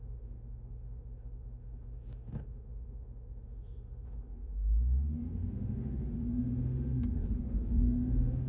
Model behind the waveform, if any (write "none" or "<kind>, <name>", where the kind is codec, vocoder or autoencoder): autoencoder, DAC-VAE